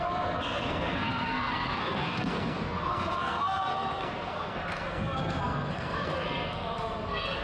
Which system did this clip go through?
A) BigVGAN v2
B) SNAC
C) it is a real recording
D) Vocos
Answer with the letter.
B